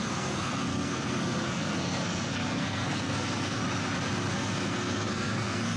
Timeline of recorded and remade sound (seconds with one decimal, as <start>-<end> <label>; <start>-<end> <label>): 0.0-3.6 remade; 3.6-4.3 recorded; 4.3-5.8 remade